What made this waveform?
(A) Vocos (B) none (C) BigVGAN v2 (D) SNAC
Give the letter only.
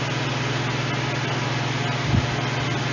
B